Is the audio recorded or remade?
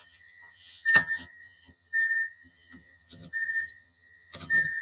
remade